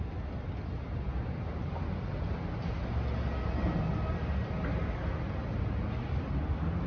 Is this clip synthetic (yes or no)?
no